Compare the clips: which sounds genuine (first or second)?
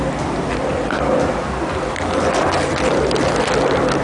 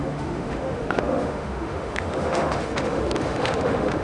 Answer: first